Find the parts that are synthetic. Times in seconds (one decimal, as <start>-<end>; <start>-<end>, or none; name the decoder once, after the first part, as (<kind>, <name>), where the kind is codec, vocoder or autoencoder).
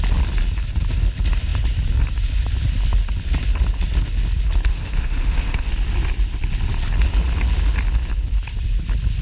4.7-5.7 (autoencoder, DAC-VAE)